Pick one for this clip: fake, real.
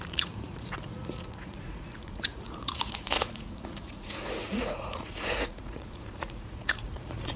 fake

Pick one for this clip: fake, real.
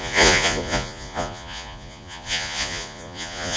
fake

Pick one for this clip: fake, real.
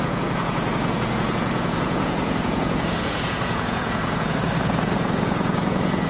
fake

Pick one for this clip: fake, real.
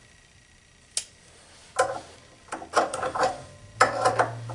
real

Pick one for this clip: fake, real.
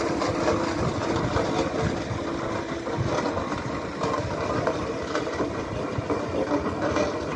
real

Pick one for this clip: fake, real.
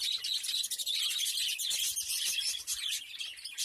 real